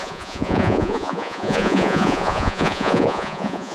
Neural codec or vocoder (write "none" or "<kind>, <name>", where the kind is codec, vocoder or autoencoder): vocoder, Vocos